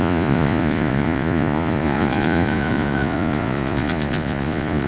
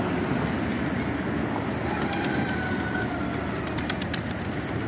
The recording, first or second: second